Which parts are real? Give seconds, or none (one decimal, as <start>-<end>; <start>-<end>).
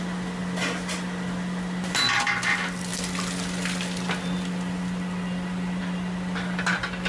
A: 0.0-7.1